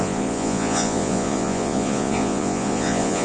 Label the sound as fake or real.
fake